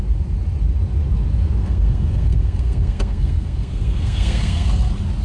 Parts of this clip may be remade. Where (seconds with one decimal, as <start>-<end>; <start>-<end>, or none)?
1.6-4.7